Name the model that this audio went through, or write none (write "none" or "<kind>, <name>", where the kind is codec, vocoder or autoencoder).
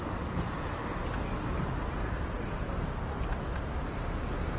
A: none